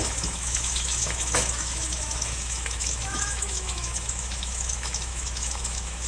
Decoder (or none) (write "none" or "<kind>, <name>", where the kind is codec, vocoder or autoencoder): autoencoder, DAC-VAE